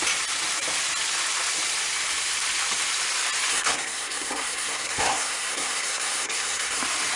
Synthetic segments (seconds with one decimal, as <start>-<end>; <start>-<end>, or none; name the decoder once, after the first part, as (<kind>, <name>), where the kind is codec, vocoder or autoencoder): 3.5-6.8 (codec, SNAC)